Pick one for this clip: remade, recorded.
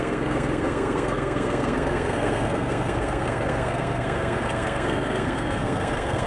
remade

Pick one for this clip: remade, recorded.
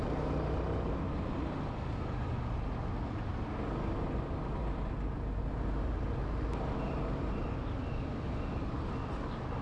recorded